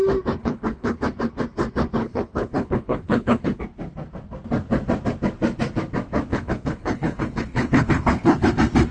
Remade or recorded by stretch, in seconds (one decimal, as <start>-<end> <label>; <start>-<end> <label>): 0.0-0.4 recorded; 0.4-1.0 remade; 1.0-2.0 recorded; 2.0-3.6 remade; 3.6-6.3 recorded; 6.3-8.5 remade; 8.5-8.9 recorded